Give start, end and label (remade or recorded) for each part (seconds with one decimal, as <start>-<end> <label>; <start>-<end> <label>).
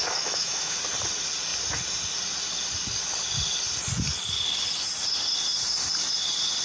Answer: 0.0-0.8 remade; 0.8-6.6 recorded